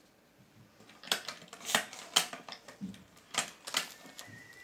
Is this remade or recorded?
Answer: recorded